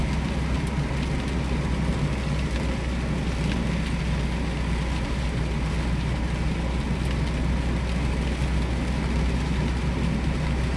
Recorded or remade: recorded